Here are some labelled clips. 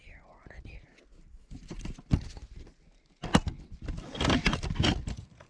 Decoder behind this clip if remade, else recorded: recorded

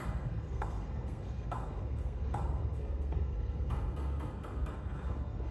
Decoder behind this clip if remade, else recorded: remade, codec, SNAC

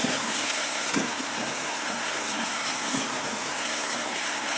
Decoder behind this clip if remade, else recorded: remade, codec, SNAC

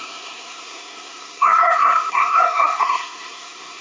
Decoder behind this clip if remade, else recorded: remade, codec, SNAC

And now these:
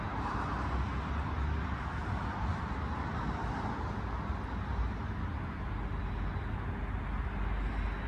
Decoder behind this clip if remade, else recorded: recorded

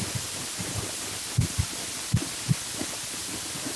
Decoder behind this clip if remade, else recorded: recorded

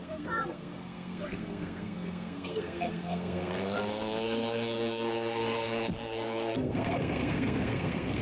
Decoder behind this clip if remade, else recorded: remade, codec, SNAC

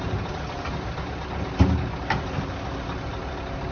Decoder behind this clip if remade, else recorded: recorded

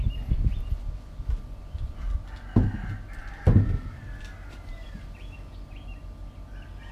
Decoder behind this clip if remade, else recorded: recorded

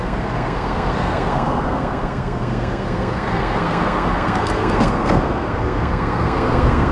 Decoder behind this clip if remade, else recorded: remade, codec, SNAC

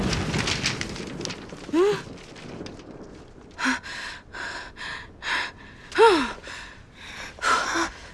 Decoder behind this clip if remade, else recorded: recorded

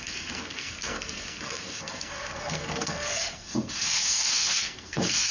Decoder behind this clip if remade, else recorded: remade, codec, SNAC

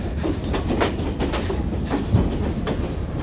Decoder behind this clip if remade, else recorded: recorded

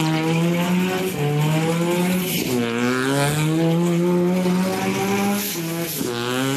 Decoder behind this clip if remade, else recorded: recorded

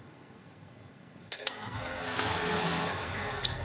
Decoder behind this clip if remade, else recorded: remade, codec, SNAC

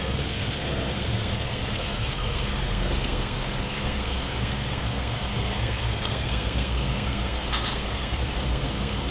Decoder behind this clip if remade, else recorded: remade, codec, SNAC